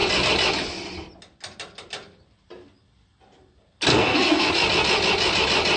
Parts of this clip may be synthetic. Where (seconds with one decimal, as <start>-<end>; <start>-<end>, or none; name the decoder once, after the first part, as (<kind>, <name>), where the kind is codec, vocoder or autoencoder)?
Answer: 3.9-4.5 (codec, SNAC)

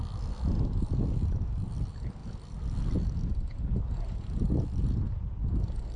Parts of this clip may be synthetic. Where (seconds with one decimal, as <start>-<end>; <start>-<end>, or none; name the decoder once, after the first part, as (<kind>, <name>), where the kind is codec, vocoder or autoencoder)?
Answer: none